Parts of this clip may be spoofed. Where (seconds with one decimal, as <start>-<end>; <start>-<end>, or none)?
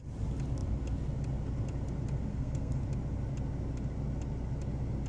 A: 2.3-2.8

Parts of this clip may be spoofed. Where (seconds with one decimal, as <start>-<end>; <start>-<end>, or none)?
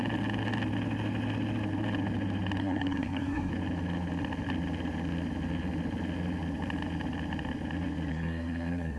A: 2.6-3.5; 8.1-9.0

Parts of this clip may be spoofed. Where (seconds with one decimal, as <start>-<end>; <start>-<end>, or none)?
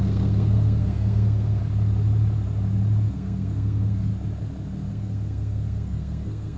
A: 0.0-1.6; 3.1-4.1; 4.9-6.6